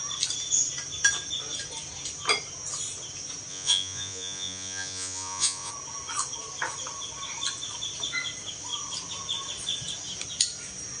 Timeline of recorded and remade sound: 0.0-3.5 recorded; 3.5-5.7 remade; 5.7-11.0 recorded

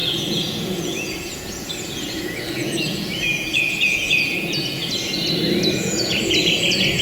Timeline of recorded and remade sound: 0.0-4.8 remade; 4.8-5.7 recorded; 5.7-7.0 remade